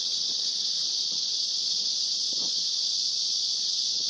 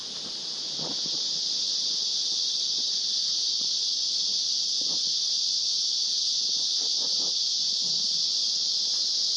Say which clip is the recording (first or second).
second